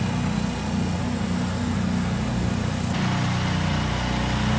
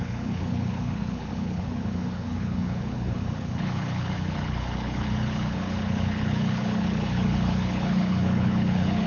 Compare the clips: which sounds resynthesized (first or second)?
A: second